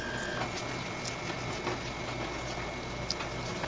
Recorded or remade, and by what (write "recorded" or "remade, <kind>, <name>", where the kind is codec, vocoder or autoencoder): recorded